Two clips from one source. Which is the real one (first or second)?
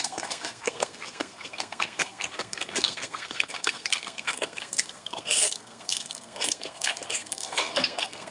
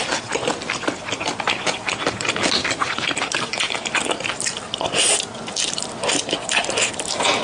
second